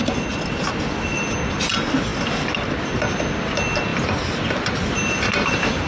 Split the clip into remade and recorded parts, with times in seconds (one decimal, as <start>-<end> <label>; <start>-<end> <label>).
0.0-5.9 recorded